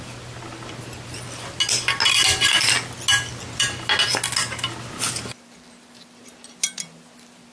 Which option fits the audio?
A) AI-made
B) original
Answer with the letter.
B